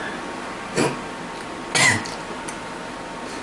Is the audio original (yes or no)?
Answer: yes